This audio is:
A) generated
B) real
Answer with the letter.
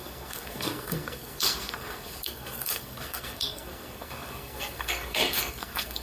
A